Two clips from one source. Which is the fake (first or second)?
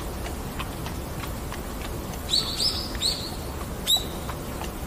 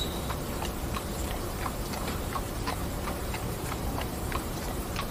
second